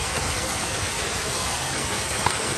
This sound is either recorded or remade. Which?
remade